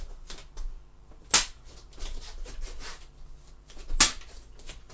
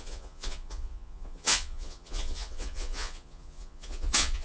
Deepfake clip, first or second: second